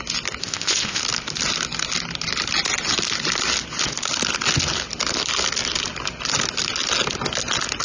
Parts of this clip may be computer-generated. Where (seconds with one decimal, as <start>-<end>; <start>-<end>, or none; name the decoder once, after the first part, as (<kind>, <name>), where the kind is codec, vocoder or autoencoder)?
0.4-1.0 (codec, ZipCodec)